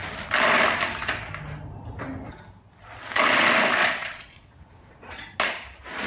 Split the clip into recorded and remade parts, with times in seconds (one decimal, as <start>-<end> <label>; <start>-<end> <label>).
0.0-3.8 recorded; 3.8-5.4 remade; 5.4-6.1 recorded